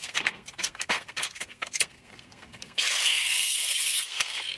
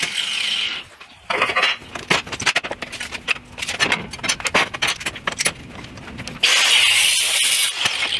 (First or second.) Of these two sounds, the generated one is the first